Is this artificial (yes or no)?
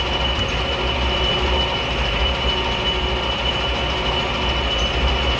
no